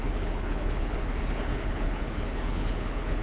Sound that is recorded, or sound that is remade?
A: remade